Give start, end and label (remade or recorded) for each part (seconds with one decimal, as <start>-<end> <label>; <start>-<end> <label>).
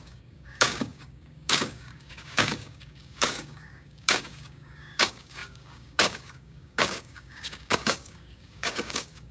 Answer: 0.0-9.3 remade